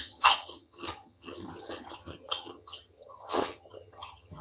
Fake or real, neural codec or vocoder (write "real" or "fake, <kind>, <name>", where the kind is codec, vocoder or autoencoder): fake, vocoder, HiFi-GAN